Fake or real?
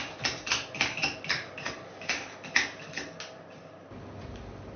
real